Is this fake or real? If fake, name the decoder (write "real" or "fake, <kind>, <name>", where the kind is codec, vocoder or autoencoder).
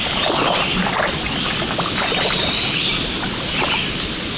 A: real